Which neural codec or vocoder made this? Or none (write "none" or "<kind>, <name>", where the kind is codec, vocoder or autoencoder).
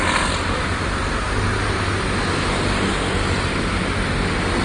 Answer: none